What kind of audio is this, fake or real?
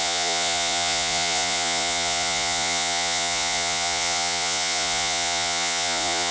fake